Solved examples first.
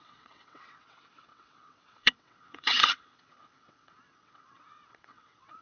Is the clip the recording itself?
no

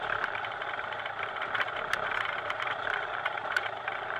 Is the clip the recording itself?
yes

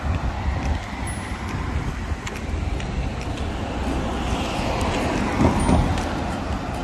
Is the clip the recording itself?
yes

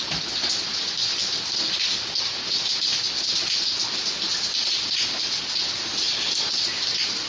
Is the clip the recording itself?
yes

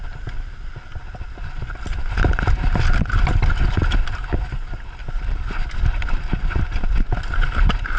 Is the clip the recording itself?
yes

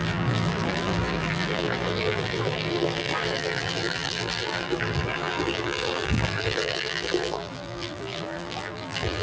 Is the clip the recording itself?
no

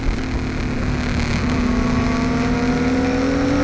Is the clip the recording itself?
yes